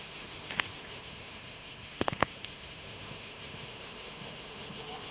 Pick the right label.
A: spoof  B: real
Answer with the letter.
A